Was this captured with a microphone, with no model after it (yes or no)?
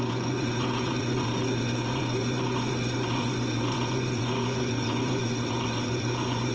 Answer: no